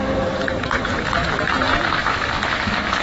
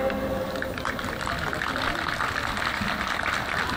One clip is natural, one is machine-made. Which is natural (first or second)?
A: second